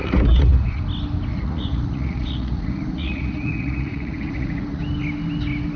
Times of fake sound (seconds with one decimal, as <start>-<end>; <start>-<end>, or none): 0.0-0.8; 1.3-4.8